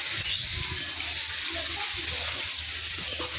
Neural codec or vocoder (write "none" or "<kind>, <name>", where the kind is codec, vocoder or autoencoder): none